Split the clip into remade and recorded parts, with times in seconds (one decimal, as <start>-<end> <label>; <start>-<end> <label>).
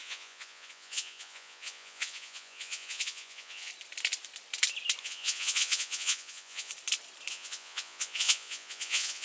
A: 0.0-3.7 remade; 3.7-5.0 recorded; 5.0-6.7 remade; 6.7-7.3 recorded; 7.3-9.2 remade